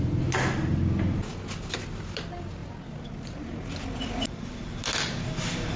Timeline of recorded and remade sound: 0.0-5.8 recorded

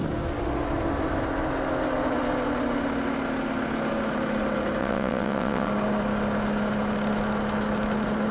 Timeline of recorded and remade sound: 0.0-4.8 recorded; 4.8-5.7 remade; 5.7-8.3 recorded